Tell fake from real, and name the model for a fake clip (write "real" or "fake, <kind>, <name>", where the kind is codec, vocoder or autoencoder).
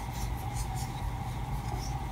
real